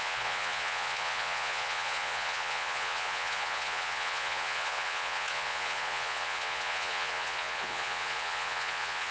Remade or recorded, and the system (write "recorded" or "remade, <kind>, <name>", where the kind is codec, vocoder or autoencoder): remade, vocoder, Vocos